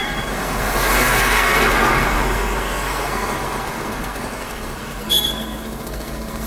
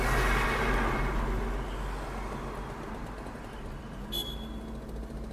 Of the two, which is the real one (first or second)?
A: second